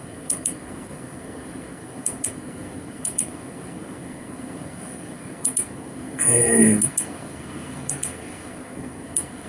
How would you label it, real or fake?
fake